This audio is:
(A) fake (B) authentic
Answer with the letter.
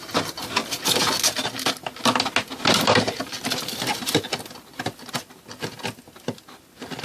B